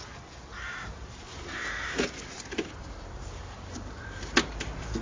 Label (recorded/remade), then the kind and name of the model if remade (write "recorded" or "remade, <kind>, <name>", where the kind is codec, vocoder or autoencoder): remade, vocoder, BigVGAN v2